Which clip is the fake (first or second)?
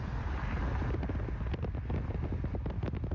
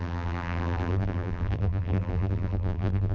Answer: second